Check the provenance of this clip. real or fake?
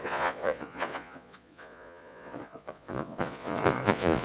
fake